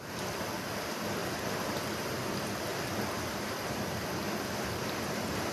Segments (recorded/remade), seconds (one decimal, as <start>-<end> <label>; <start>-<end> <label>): 0.0-5.5 recorded